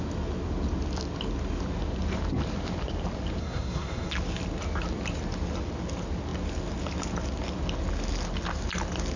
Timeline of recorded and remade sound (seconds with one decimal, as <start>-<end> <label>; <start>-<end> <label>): 0.0-3.4 recorded; 3.4-4.1 remade; 4.1-9.2 recorded